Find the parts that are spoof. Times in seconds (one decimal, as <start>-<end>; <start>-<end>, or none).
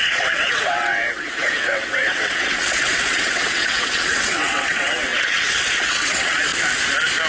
0.0-6.5